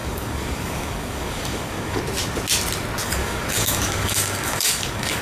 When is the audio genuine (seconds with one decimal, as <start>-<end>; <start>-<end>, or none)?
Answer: 2.0-3.0